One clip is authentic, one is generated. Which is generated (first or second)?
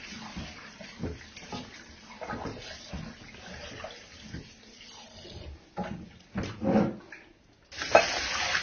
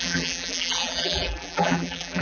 second